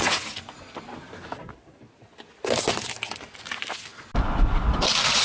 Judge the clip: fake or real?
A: real